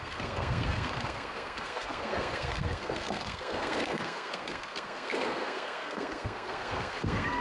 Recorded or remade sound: remade